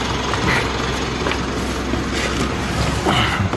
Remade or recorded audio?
recorded